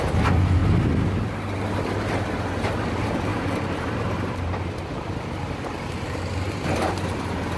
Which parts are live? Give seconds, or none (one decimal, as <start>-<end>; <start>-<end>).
0.0-3.3; 4.5-7.6